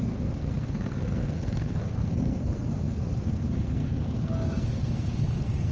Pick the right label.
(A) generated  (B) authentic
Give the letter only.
A